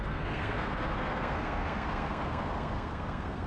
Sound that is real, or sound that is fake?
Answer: fake